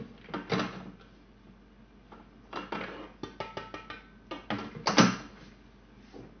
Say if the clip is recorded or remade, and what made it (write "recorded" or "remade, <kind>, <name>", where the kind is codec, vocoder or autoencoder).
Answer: recorded